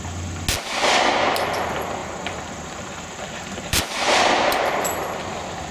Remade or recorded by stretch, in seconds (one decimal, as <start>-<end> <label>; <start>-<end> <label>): 0.0-2.0 recorded; 2.0-4.7 remade; 4.7-5.7 recorded

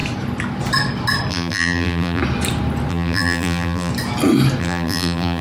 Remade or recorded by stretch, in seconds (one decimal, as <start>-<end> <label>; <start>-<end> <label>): 0.0-1.3 recorded; 1.3-2.2 remade; 2.2-2.9 recorded; 2.9-3.9 remade; 3.9-4.6 recorded; 4.6-5.4 remade